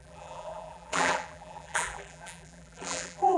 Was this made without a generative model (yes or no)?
no